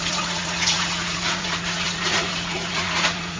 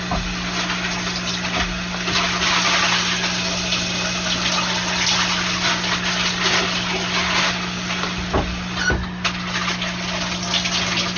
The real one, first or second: second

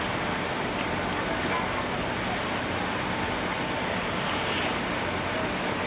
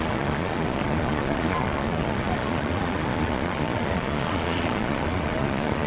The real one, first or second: first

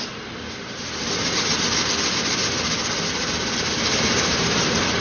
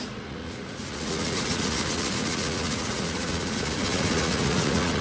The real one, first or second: first